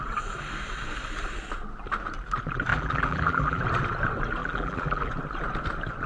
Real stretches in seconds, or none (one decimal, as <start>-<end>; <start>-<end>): 0.0-2.7; 3.6-4.4; 5.1-6.1